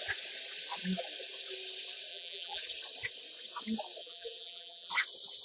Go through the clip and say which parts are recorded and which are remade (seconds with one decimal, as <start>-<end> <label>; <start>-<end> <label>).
0.0-2.1 recorded; 2.1-2.6 remade; 2.6-4.0 recorded; 4.0-4.9 remade; 4.9-5.4 recorded